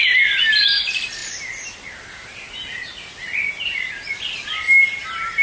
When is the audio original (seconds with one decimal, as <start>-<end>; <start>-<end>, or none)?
0.0-5.4